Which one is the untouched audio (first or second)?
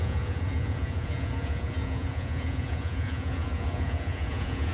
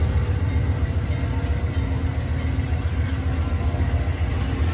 second